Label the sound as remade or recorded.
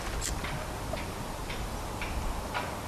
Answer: remade